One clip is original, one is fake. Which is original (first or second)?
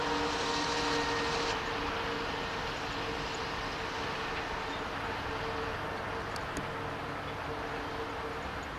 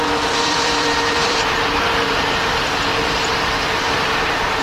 first